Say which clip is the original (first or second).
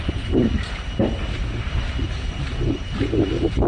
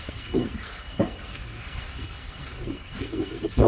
first